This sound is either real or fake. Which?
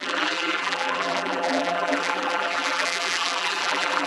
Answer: fake